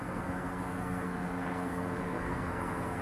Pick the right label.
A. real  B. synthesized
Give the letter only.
B